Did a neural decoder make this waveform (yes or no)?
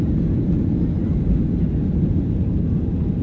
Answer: no